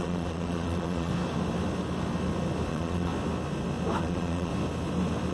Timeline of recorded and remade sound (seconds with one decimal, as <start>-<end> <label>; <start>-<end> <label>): 0.0-1.1 remade; 1.1-2.7 recorded; 2.7-3.1 remade; 3.1-4.0 recorded; 4.0-4.5 remade; 4.5-5.3 recorded